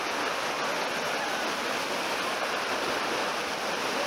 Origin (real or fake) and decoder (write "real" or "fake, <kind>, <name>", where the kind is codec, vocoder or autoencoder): real